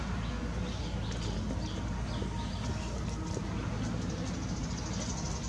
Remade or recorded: recorded